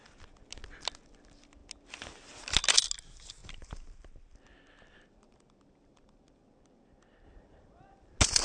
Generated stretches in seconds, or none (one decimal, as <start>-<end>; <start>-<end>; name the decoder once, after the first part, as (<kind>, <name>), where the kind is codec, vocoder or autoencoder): none

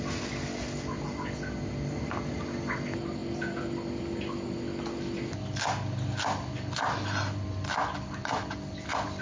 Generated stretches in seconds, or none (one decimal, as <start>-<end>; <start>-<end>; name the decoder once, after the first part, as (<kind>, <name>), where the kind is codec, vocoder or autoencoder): none

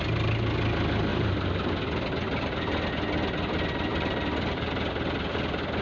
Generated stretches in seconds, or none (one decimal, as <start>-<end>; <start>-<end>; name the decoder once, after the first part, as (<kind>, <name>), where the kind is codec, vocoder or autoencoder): 1.1-1.7 (vocoder, BigVGAN v2); 3.9-4.7

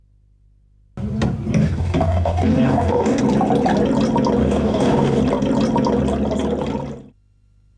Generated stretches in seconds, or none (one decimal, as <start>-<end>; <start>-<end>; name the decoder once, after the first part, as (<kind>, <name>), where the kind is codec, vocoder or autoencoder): 1.6-3.2 (codec, DAC); 4.4-5.2